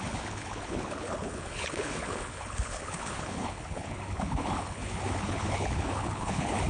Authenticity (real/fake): fake